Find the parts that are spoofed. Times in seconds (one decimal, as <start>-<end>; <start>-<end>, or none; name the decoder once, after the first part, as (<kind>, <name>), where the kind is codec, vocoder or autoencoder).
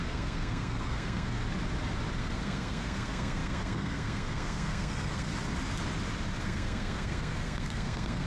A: 0.0-1.4 (codec, SNAC); 2.2-5.3; 6.4-8.3